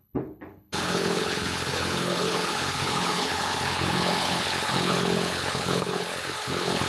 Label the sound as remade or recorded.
remade